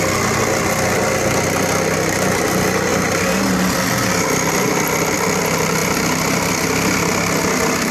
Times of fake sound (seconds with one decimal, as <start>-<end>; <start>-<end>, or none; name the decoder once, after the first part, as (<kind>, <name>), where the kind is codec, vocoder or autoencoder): 2.9-3.4 (vocoder, BigVGAN v2)